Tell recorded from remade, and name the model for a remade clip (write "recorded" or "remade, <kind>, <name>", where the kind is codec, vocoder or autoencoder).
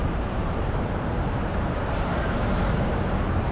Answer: remade, vocoder, BigVGAN v2